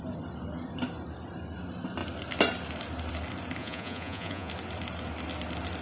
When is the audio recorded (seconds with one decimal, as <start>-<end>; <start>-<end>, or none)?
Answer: 0.0-3.6; 4.5-5.8